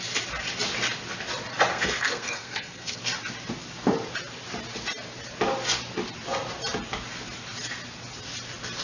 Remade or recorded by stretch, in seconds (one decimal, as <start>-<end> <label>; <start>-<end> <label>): 0.0-1.7 recorded; 1.7-3.0 remade; 3.0-8.8 recorded